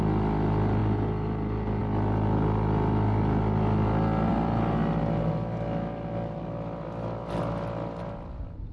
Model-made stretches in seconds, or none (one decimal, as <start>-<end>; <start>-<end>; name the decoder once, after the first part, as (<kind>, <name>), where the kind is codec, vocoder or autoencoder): none

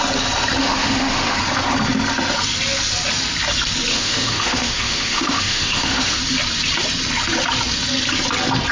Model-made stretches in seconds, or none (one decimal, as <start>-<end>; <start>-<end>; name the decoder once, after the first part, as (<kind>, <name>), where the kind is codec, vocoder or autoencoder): 0.6-1.4 (autoencoder, DAC-VAE); 3.9-6.2